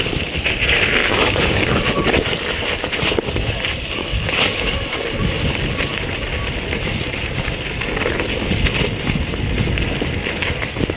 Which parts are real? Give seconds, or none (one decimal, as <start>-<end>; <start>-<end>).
0.0-1.0; 1.8-4.0; 4.8-11.0